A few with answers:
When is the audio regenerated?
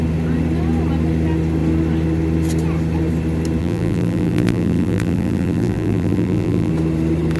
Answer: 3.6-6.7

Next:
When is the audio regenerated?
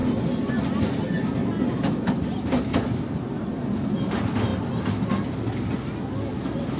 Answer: none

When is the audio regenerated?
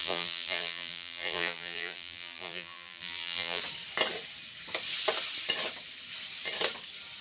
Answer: 0.0-3.6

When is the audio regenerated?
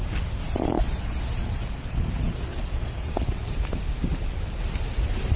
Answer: 0.4-3.6